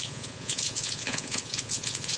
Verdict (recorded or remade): remade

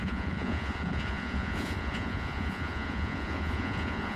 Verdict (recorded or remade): remade